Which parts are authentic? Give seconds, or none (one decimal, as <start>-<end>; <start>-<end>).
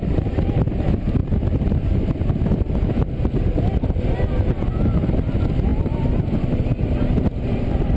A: 0.0-8.0